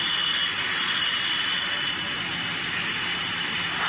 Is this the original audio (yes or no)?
yes